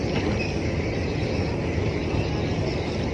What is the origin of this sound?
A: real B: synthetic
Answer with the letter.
A